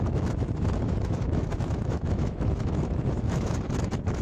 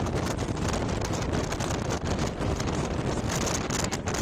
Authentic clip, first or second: second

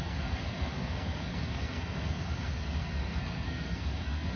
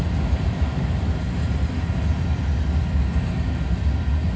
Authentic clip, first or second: second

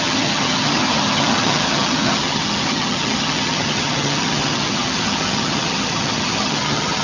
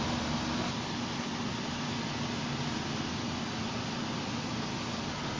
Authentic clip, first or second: second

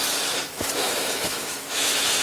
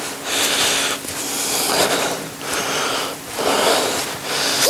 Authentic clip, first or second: second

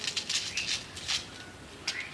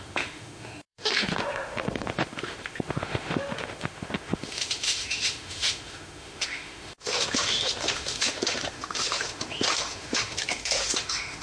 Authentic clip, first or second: first